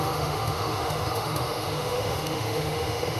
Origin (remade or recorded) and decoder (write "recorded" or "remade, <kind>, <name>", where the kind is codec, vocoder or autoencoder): remade, autoencoder, DAC-VAE